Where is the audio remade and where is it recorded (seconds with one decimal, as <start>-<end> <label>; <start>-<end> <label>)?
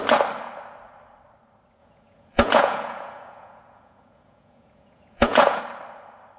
0.0-1.8 recorded; 1.8-5.6 remade; 5.6-6.4 recorded